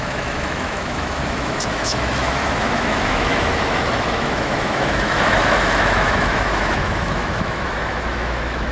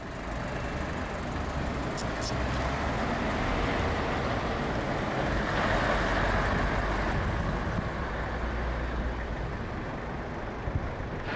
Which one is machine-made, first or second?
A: first